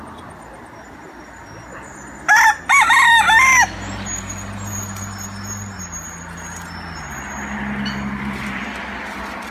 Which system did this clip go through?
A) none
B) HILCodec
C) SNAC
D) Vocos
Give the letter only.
A